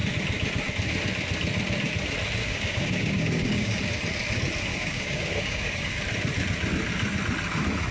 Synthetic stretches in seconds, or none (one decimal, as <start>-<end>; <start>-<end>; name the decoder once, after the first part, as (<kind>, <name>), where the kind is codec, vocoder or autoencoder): 2.4-3.8 (codec, DAC); 4.7-6.0